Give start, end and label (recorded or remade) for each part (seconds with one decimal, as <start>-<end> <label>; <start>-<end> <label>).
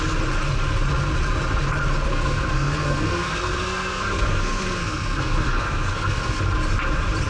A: 0.0-2.1 recorded; 2.1-6.4 remade; 6.4-7.3 recorded